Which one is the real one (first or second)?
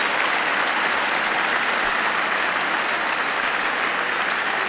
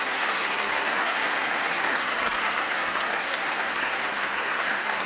first